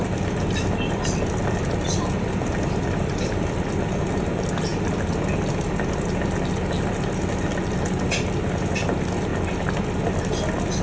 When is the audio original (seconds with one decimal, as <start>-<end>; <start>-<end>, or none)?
4.0-10.8